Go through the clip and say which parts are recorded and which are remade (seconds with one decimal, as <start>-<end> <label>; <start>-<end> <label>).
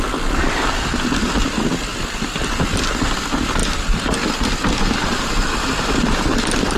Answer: 0.0-6.8 recorded